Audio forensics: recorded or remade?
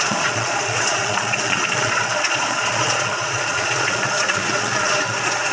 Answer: remade